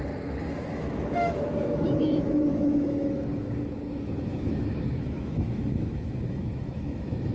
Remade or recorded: remade